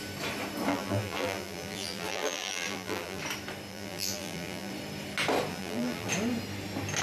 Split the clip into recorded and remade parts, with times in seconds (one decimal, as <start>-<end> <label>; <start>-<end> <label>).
0.0-0.7 recorded; 0.7-3.2 remade; 3.2-3.7 recorded; 3.7-4.7 remade; 4.7-5.5 recorded; 5.5-6.1 remade; 6.1-7.0 recorded